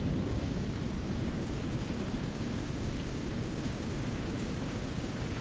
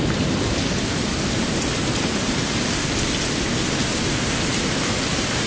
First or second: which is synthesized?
first